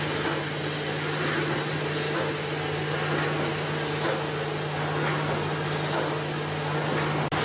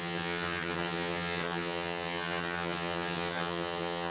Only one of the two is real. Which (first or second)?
first